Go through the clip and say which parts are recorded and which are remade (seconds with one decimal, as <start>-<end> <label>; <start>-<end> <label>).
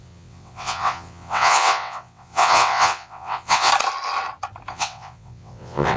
0.0-3.7 remade; 3.7-4.7 recorded; 4.7-6.0 remade